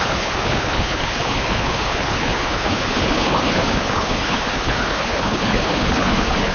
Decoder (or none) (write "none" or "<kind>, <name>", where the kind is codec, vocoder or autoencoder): codec, HILCodec